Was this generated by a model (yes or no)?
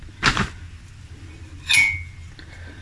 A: no